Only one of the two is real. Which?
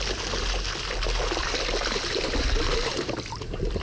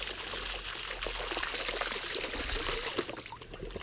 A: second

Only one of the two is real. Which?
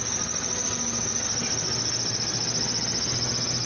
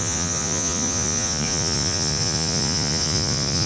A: first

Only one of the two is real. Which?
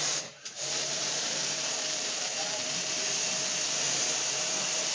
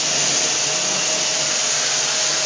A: second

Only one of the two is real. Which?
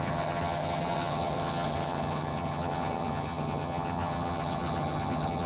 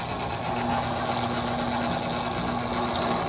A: second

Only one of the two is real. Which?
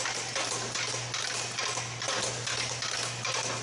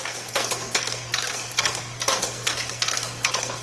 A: first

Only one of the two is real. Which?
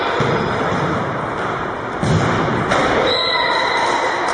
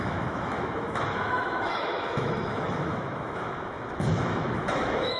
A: first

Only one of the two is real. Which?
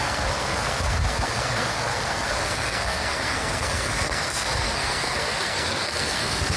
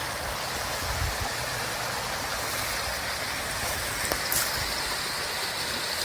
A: second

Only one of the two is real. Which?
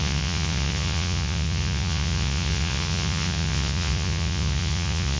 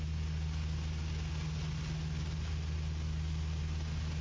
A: second